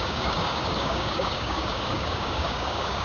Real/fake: fake